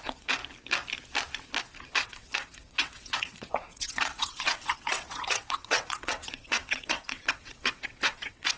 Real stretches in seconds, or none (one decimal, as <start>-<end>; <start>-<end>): 0.4-1.9